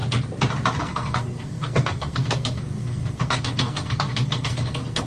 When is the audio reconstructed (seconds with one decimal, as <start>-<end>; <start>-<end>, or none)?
0.8-5.1